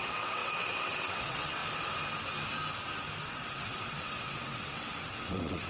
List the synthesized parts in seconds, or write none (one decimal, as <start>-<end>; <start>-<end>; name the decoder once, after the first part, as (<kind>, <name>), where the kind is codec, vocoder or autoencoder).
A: 0.0-1.6 (vocoder, WaveNeXt); 3.2-5.7